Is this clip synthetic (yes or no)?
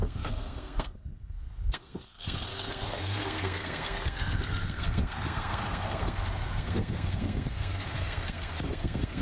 yes